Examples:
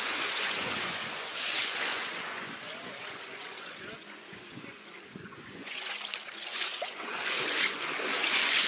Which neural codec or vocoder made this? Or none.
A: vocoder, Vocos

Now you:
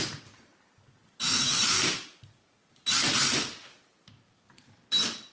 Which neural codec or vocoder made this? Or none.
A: none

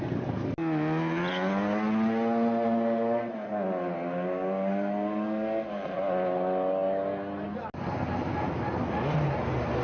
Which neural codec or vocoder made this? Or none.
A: none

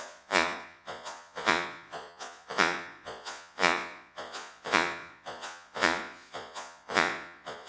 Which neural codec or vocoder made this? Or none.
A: vocoder, Vocos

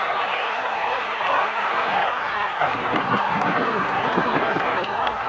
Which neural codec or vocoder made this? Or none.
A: codec, SNAC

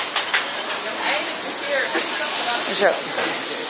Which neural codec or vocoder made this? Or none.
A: none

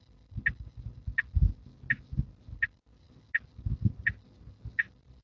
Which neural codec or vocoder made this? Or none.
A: none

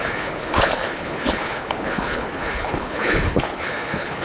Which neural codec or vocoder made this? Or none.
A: codec, HILCodec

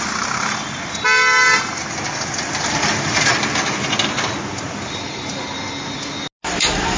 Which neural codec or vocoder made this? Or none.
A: none